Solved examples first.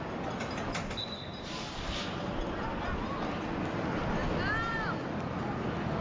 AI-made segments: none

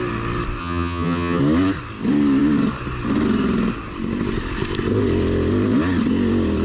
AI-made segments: 0.6-1.4